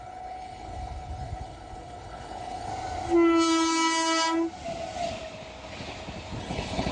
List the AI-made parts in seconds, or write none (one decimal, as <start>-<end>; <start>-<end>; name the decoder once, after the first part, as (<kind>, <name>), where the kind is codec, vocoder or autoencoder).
0.0-2.7 (codec, HILCodec); 6.4-6.9